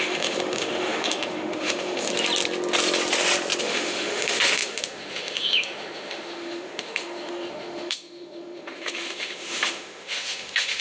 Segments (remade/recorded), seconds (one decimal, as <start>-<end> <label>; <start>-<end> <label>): 0.0-2.1 remade; 2.1-3.6 recorded; 3.6-10.8 remade